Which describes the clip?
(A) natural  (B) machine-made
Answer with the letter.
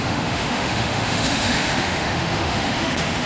B